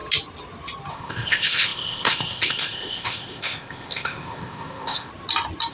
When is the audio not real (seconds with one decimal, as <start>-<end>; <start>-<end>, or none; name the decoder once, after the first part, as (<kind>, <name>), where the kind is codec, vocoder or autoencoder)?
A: 0.9-5.1 (codec, ZipCodec)